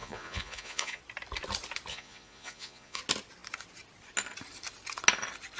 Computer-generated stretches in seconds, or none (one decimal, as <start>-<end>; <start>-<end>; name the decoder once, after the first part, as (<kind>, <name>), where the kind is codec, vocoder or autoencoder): 0.0-1.0 (vocoder, Vocos); 1.9-3.0